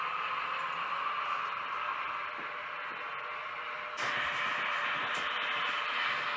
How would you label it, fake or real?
real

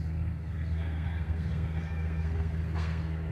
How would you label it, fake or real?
fake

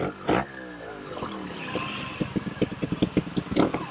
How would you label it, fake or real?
real